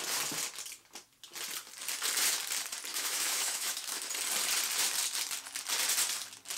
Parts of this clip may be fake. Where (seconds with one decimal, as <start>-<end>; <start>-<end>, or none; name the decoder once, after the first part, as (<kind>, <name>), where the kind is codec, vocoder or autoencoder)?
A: 2.9-4.1 (autoencoder, DAC-VAE)